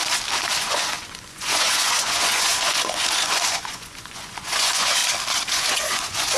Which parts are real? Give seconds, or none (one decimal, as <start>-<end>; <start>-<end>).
0.0-0.6; 5.0-5.5